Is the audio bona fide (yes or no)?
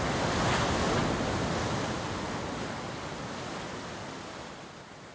yes